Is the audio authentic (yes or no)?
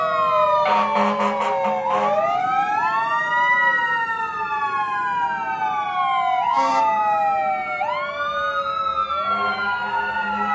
yes